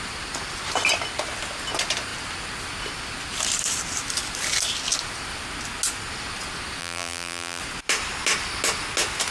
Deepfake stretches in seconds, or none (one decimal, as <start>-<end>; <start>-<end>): 6.8-7.6